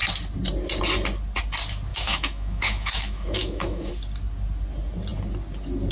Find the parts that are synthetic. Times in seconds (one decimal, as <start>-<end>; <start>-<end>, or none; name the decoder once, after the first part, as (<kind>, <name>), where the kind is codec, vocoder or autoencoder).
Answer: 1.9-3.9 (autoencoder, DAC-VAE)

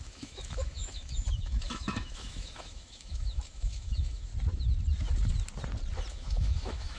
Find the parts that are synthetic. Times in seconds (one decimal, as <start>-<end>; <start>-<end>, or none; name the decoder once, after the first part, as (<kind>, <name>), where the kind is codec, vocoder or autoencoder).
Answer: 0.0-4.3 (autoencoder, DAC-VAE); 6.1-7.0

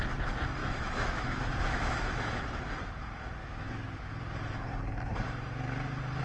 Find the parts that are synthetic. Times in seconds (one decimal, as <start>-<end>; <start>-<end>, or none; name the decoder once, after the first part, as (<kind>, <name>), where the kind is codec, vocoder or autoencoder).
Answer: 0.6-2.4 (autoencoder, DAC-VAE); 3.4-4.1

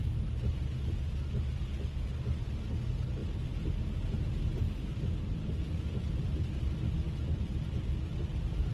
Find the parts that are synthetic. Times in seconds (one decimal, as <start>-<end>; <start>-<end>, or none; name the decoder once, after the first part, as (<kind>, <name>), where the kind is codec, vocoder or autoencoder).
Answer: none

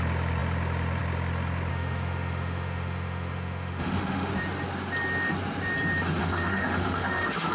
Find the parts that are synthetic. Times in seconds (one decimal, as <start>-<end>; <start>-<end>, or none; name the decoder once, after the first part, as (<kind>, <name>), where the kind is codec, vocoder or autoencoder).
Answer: 1.7-4.3 (autoencoder, DAC-VAE); 6.2-7.5

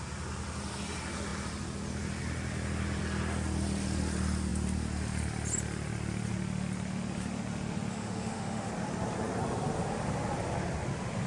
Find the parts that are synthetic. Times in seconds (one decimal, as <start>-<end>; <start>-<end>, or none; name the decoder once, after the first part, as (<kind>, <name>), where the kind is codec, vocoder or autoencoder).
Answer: 7.9-8.7 (autoencoder, DAC-VAE)